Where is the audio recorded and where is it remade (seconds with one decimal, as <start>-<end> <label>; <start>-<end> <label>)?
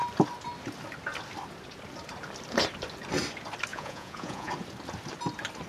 0.0-3.7 recorded; 3.7-4.5 remade; 4.5-5.7 recorded